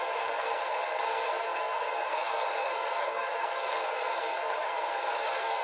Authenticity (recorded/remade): remade